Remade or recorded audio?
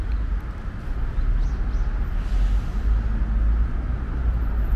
recorded